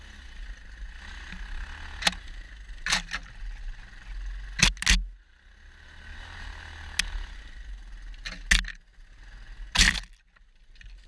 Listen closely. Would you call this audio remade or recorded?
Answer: recorded